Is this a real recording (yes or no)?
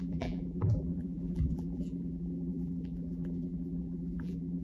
no